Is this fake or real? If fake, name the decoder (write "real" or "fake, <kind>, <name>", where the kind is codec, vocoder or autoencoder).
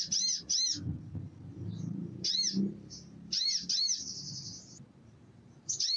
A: fake, vocoder, BigVGAN v2